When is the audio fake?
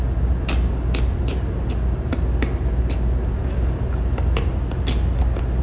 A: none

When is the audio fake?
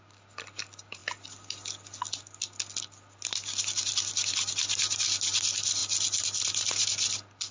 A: none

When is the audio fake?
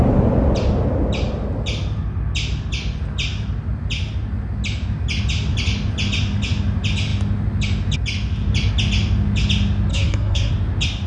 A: 9.9-10.5 (codec, SNAC)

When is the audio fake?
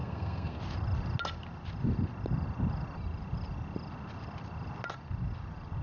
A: 0.0-0.6 (codec, SNAC)